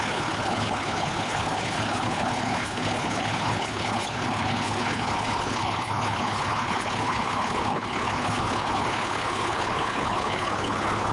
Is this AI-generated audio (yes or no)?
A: yes